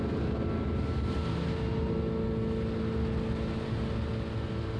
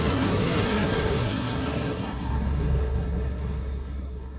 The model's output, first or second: second